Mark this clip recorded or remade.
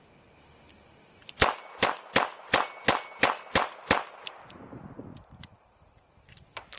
recorded